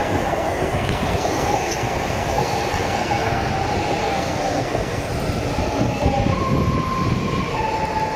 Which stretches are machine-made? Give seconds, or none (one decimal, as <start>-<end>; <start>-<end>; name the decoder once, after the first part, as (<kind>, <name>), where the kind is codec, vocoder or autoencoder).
0.0-3.5 (codec, SNAC); 4.0-5.1; 5.6-6.1